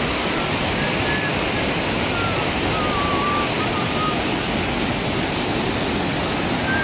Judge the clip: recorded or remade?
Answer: recorded